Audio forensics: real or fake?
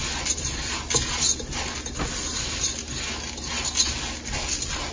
real